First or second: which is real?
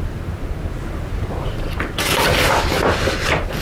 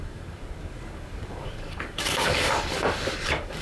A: first